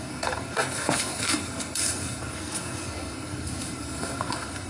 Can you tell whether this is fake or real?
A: fake